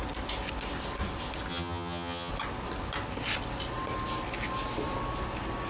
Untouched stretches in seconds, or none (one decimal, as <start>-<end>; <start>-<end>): 0.0-1.5; 2.3-5.7